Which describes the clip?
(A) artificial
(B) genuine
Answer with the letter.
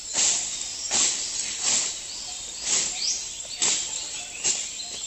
A